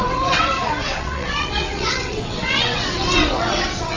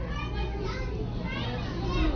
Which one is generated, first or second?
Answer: first